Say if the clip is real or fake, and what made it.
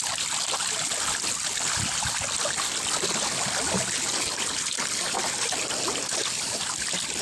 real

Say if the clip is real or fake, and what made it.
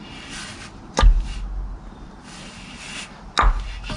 real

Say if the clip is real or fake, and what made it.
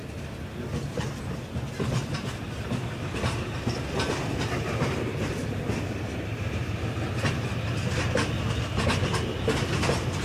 real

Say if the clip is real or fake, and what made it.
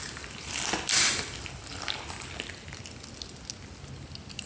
real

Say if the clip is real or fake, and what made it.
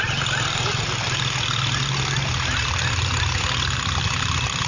real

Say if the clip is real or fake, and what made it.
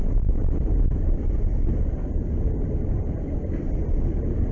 real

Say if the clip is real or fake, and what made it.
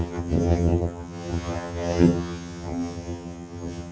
fake, vocoder, HiFi-GAN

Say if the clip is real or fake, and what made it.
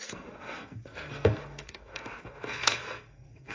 fake, codec, SNAC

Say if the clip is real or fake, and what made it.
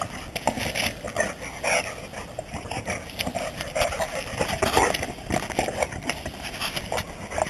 real